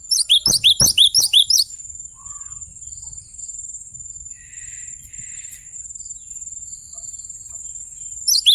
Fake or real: real